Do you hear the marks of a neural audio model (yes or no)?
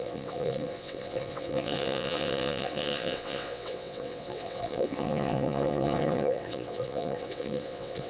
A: yes